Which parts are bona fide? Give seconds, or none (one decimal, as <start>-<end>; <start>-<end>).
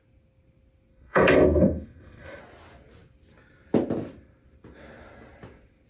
0.0-0.9; 2.4-5.9